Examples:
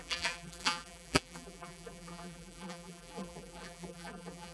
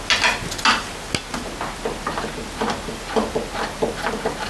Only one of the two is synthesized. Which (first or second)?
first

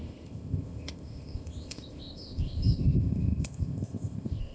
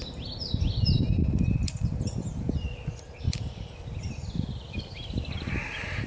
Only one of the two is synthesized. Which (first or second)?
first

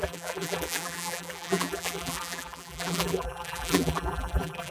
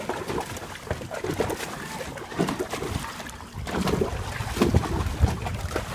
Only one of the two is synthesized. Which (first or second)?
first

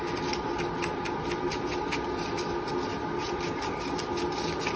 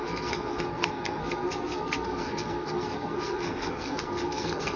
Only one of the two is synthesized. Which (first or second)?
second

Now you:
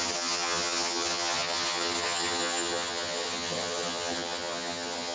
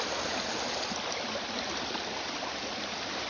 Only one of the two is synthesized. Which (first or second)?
first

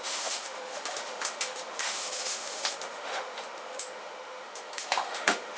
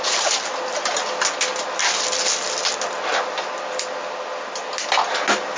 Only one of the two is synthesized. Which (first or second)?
first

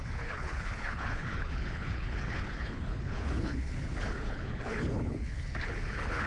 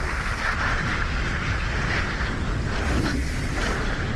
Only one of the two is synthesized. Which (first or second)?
first